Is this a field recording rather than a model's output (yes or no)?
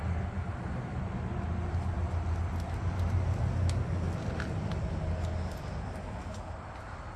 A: yes